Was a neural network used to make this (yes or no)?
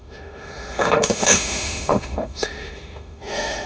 yes